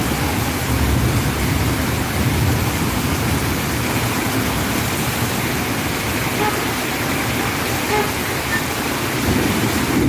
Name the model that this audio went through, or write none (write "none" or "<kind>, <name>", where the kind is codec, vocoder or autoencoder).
none